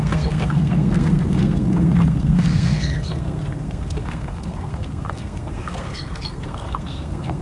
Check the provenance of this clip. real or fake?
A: fake